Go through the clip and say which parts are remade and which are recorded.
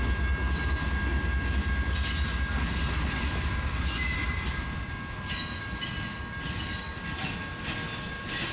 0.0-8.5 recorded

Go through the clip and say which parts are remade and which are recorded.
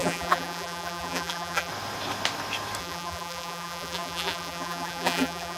0.0-1.7 remade; 1.7-2.8 recorded; 2.8-5.6 remade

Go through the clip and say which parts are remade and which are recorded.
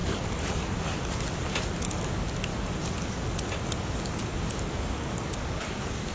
0.0-1.8 recorded; 1.8-2.5 remade; 2.5-3.8 recorded; 3.8-6.1 remade